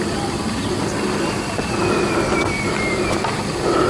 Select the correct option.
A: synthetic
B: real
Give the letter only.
B